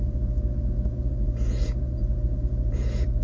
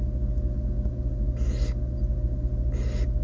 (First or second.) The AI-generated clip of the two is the first